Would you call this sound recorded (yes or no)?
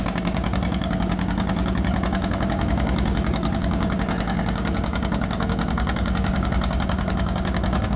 no